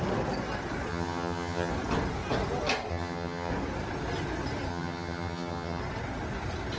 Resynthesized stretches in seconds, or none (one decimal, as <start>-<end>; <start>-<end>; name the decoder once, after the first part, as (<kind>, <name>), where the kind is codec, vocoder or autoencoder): 0.9-1.7 (vocoder, HiFi-GAN); 2.9-3.5; 4.7-5.8